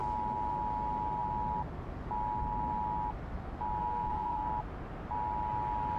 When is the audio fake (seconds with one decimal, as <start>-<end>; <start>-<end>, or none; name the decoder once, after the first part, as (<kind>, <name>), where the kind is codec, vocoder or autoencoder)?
3.8-4.5 (codec, SNAC)